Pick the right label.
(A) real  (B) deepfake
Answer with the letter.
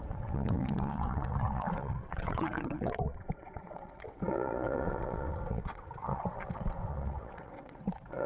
B